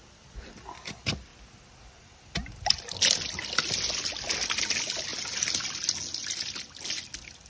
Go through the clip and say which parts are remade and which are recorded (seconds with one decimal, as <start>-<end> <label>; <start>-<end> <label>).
0.0-7.5 recorded